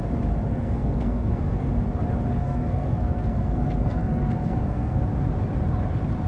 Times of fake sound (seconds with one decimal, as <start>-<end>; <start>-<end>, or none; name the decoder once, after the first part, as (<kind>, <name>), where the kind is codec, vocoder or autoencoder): 0.5-1.7 (codec, SNAC); 2.4-5.0